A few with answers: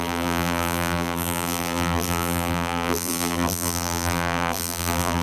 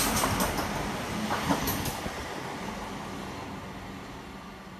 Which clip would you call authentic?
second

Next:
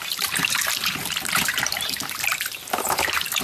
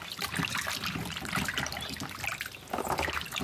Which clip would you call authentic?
second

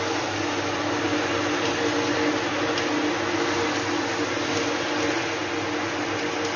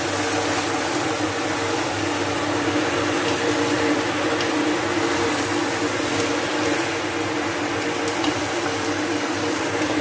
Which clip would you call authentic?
first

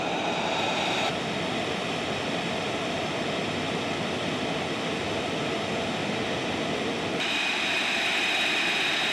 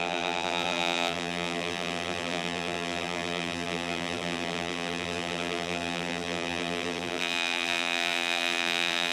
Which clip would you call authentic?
first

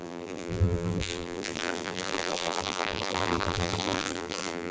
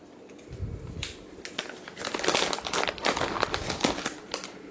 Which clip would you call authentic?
second